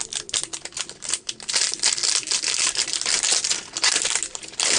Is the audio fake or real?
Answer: real